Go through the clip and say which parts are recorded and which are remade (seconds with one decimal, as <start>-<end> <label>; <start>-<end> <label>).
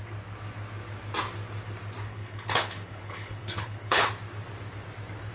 0.0-2.1 recorded; 2.1-4.1 remade; 4.1-5.3 recorded